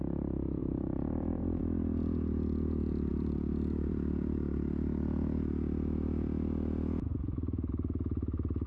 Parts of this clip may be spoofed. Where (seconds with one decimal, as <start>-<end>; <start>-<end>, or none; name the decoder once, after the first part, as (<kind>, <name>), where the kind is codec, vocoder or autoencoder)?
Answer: 0.6-1.6 (vocoder, BigVGAN v2)